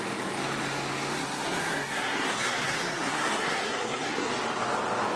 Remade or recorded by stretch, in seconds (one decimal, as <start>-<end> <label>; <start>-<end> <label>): 0.0-1.2 recorded; 1.2-4.3 remade; 4.3-5.2 recorded